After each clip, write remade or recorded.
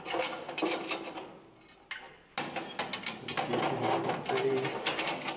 recorded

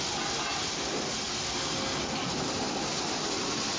recorded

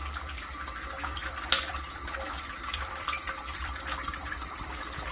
remade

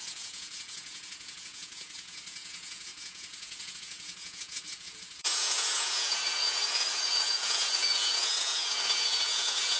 remade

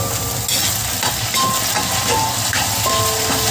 recorded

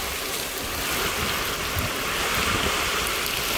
recorded